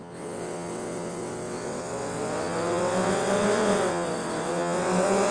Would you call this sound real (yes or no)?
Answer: no